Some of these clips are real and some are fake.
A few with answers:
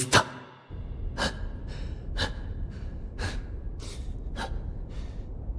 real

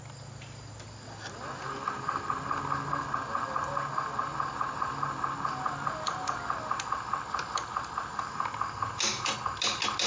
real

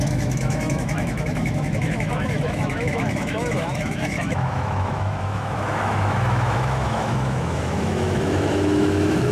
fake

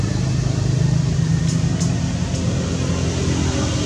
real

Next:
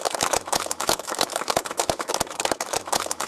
fake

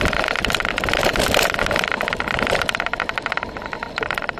real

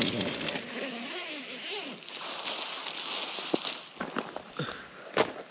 real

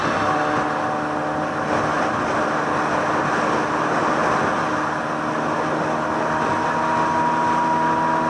real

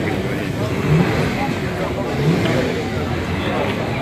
real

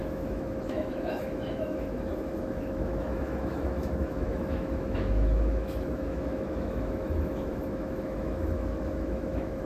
fake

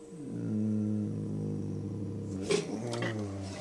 real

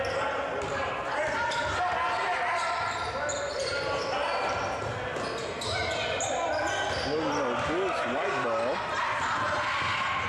real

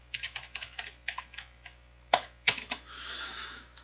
fake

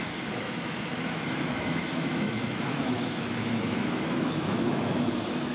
fake